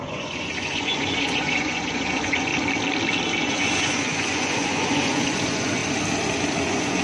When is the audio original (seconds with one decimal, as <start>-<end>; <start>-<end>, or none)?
2.5-3.4; 5.8-6.6